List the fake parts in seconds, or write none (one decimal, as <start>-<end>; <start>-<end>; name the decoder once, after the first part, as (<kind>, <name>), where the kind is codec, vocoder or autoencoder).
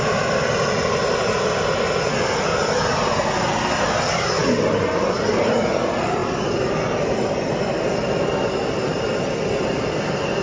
none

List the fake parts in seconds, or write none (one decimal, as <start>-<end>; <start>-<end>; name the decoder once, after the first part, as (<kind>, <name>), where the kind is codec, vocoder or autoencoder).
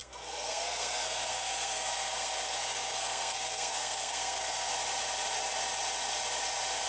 0.0-4.7 (codec, SNAC)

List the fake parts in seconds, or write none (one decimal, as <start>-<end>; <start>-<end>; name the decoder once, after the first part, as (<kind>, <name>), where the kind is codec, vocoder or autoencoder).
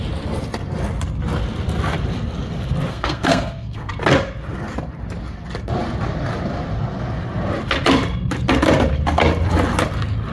2.9-3.9 (codec, SNAC)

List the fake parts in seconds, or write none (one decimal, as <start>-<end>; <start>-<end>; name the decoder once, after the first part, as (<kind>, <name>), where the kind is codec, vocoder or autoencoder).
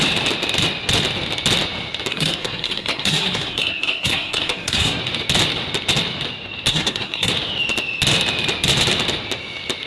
2.1-5.0 (codec, SNAC); 6.7-7.3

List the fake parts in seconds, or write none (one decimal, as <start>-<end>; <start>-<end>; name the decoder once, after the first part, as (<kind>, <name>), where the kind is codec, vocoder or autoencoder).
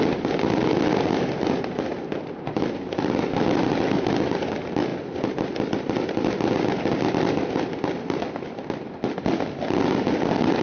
none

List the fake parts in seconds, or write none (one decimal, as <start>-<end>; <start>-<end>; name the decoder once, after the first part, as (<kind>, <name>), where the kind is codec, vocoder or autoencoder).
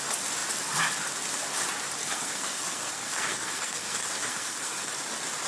2.0-4.9 (codec, SNAC)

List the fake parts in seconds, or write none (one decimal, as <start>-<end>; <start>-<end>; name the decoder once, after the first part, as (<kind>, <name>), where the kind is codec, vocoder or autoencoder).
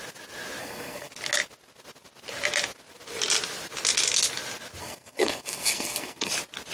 0.6-1.1 (codec, SNAC); 4.8-6.3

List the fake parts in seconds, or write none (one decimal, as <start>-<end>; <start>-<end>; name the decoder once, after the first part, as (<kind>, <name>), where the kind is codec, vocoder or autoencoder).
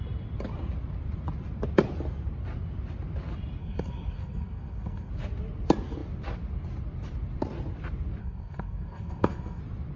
3.6-5.1 (codec, SNAC); 8.2-9.6